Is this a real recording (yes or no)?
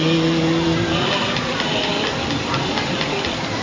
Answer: yes